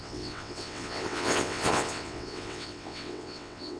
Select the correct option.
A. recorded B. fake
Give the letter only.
B